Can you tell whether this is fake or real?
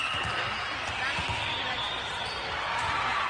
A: real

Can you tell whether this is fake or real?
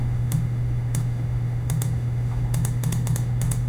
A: fake